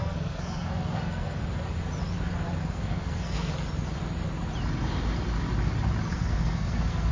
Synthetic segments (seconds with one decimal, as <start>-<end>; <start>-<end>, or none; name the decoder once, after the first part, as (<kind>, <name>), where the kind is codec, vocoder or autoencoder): 0.0-1.4 (codec, SNAC); 2.6-3.5; 6.1-7.1